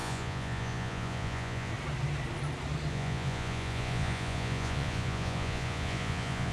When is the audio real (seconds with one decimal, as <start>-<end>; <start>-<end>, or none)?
1.7-2.9